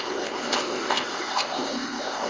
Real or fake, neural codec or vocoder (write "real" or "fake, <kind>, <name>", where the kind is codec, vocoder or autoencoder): fake, codec, ZipCodec